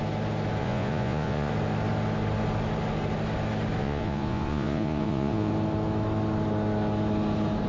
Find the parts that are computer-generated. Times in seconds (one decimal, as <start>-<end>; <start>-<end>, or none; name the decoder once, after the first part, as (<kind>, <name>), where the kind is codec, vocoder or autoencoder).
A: 0.6-1.5 (vocoder, Vocos); 3.8-5.5